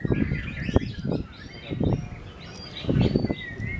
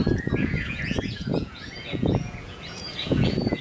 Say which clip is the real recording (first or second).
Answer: first